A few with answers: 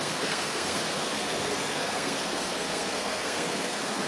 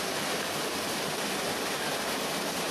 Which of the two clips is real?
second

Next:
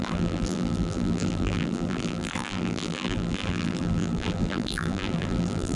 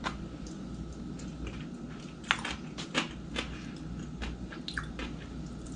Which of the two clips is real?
second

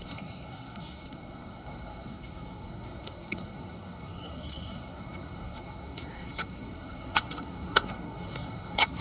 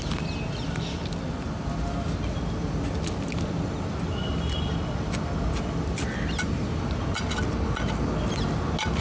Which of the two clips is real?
second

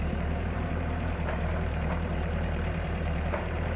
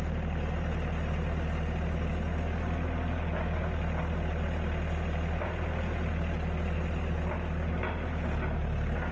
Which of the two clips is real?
second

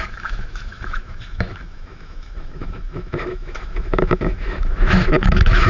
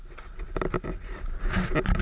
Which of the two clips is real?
second